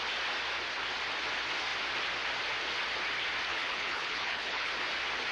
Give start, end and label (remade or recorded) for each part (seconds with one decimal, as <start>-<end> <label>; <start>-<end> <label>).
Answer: 0.0-3.5 recorded; 3.5-4.7 remade; 4.7-5.3 recorded